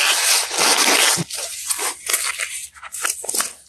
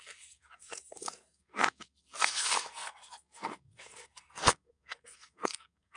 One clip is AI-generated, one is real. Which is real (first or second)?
first